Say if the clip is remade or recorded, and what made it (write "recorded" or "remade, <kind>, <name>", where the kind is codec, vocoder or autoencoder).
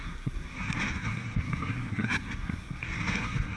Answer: remade, codec, SNAC